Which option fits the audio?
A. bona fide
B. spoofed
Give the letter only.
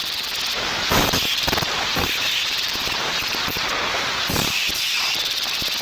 B